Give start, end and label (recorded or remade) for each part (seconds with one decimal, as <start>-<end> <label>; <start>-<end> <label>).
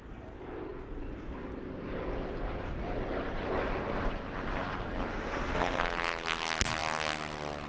0.0-5.1 recorded; 5.1-5.8 remade; 5.8-7.7 recorded